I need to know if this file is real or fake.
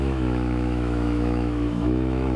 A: fake